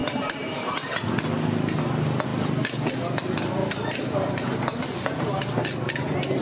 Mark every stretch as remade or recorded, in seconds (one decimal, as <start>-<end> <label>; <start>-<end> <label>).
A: 0.0-0.9 remade; 0.9-3.6 recorded; 3.6-5.3 remade; 5.3-6.4 recorded